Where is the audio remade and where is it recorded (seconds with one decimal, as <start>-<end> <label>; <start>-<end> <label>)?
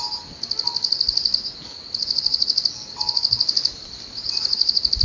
0.0-5.0 recorded